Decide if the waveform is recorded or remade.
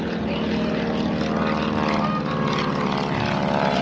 recorded